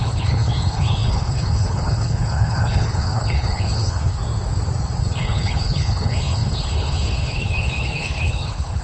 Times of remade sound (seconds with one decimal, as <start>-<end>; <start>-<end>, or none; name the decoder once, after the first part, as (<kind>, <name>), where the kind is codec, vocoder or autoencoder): 0.0-4.2 (codec, HILCodec); 5.0-8.8